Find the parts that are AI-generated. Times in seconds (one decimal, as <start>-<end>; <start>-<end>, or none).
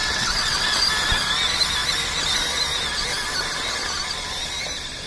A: 0.0-0.8